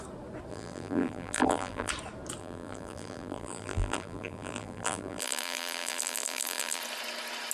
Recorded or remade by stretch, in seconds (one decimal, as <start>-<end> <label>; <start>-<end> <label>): 0.0-0.5 recorded; 0.5-1.9 remade; 1.9-2.4 recorded; 2.4-6.8 remade; 6.8-7.5 recorded